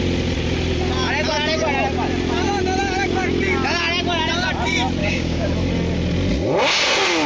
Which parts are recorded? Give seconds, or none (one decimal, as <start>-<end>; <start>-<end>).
0.0-5.0; 5.5-7.3